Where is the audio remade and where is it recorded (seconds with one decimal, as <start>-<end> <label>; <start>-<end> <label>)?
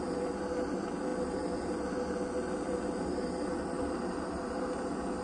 0.0-5.2 recorded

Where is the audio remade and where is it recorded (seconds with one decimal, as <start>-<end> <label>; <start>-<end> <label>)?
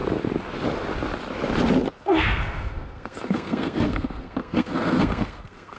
0.0-1.9 recorded; 1.9-5.8 remade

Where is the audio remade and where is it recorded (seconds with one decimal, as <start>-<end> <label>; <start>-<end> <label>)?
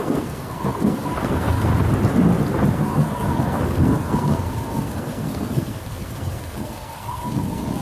0.0-1.7 remade; 1.7-2.7 recorded; 2.7-7.8 remade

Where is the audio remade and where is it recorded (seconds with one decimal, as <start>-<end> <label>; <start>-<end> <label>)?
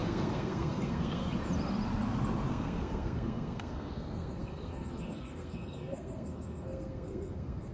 0.0-1.2 remade; 1.2-2.5 recorded; 2.5-7.7 remade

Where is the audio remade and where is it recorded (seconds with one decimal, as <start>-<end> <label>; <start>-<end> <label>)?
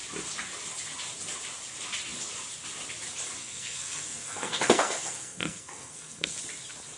0.0-3.4 recorded; 3.4-6.4 remade; 6.4-7.0 recorded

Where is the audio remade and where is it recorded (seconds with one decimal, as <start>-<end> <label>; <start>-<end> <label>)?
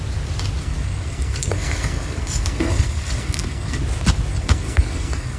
0.0-0.6 recorded; 0.6-3.8 remade; 3.8-4.3 recorded; 4.3-5.4 remade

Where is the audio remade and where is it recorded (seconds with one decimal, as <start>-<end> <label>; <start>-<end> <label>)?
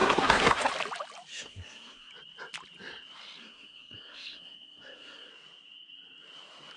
0.0-0.7 remade; 0.7-1.3 recorded; 1.3-2.1 remade; 2.1-3.4 recorded; 3.4-5.3 remade; 5.3-6.8 recorded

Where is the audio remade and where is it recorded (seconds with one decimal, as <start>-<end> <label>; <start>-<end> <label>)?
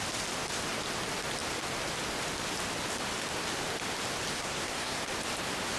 0.0-4.3 recorded; 4.3-5.0 remade; 5.0-5.8 recorded